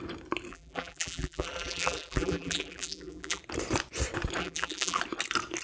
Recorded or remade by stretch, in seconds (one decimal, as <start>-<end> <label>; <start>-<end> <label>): 0.0-0.5 recorded; 0.5-3.4 remade; 3.4-4.4 recorded; 4.4-5.0 remade; 5.0-5.6 recorded